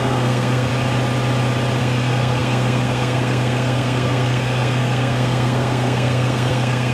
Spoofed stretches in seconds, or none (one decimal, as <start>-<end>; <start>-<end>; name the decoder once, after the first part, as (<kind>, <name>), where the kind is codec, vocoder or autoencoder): 0.0-0.7 (codec, SNAC); 1.8-6.9